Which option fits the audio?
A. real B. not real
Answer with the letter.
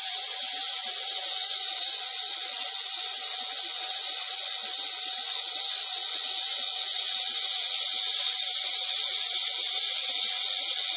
B